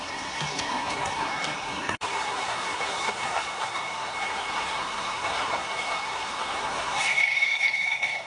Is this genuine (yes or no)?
no